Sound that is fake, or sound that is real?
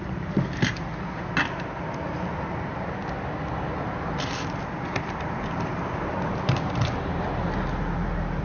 real